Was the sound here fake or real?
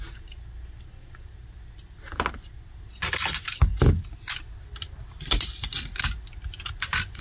real